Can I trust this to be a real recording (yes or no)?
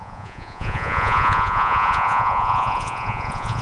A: no